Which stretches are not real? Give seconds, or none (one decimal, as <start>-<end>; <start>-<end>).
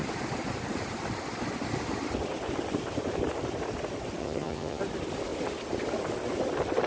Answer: 4.2-4.8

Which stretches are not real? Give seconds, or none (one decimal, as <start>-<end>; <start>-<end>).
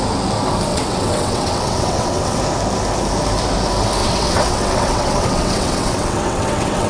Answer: 0.7-2.4; 4.0-6.9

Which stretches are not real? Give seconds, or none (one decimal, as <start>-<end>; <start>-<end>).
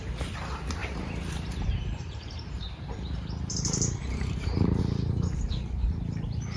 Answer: 0.8-4.8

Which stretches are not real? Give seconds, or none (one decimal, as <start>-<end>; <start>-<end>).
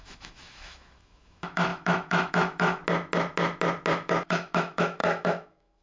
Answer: 0.0-2.8; 3.9-5.8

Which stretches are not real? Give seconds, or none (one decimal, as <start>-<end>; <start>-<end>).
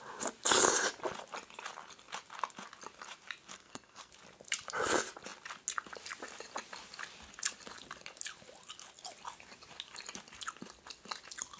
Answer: 3.5-4.1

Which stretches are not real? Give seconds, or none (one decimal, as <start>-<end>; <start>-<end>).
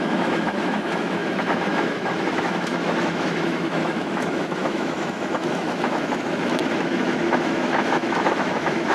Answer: 0.0-8.9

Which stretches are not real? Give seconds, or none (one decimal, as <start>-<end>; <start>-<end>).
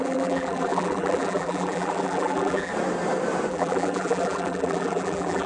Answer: 0.0-2.7; 3.5-5.5